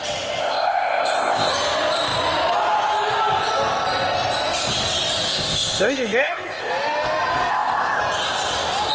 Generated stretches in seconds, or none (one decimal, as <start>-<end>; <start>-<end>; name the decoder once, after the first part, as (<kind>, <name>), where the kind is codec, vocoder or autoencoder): 0.4-1.5 (codec, ZipCodec); 5.3-6.7; 7.5-8.0